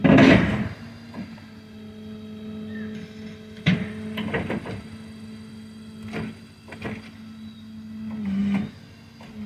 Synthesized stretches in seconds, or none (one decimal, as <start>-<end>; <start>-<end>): none